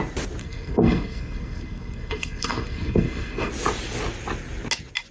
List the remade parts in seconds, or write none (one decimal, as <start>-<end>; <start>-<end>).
0.4-3.5